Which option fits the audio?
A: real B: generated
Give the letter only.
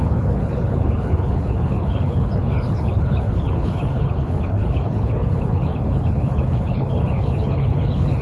B